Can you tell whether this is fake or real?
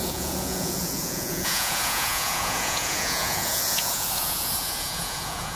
fake